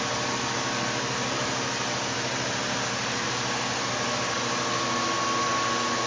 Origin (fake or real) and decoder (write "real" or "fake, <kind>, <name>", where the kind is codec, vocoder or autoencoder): real